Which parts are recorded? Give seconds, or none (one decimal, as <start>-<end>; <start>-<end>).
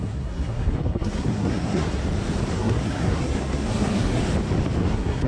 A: 2.0-2.5; 4.2-4.8